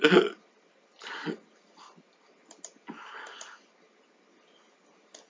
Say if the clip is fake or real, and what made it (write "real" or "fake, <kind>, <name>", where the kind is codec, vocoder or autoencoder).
real